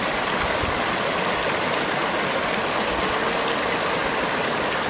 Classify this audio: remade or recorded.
recorded